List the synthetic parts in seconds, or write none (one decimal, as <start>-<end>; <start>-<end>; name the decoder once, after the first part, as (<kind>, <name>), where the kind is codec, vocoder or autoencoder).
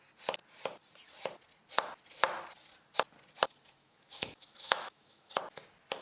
3.8-5.3 (autoencoder, DAC-VAE)